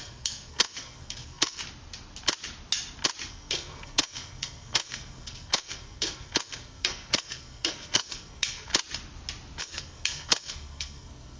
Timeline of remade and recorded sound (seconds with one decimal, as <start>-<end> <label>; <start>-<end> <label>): 0.0-1.6 remade; 1.6-3.3 recorded; 3.3-8.7 remade; 8.7-9.6 recorded; 9.6-11.4 remade